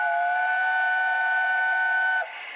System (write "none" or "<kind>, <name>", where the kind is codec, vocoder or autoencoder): none